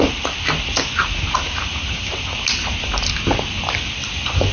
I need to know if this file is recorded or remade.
recorded